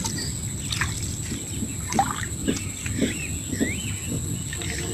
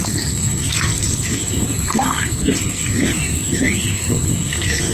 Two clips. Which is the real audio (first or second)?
first